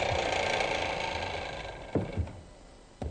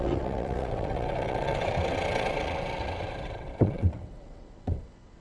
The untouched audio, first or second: first